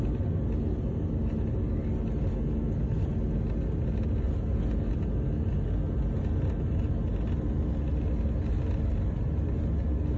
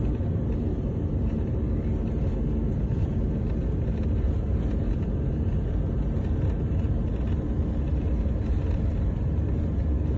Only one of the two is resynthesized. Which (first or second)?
second